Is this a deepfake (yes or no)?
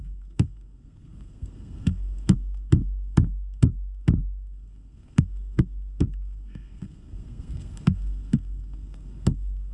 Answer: yes